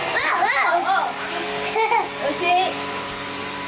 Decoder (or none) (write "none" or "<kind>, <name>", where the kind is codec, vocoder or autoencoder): none